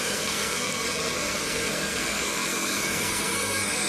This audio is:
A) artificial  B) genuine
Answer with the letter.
A